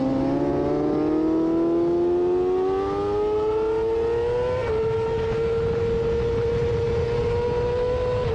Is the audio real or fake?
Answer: real